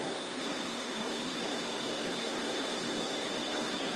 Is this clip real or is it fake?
fake